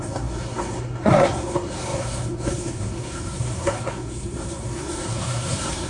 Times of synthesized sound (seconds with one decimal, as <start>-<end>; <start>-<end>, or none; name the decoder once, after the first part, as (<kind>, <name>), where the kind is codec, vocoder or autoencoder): 0.0-5.9 (codec, SNAC)